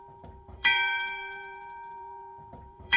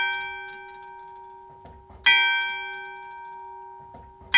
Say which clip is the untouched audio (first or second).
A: second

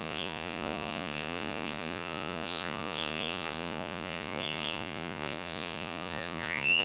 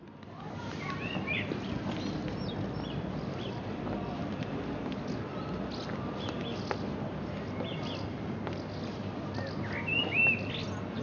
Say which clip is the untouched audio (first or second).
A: second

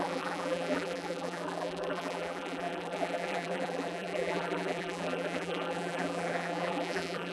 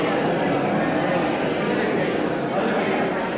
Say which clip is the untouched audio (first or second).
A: second